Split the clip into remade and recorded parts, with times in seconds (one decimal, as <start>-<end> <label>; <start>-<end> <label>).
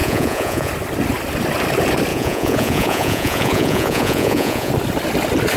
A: 0.0-0.7 remade; 0.7-2.1 recorded; 2.1-4.7 remade; 4.7-5.6 recorded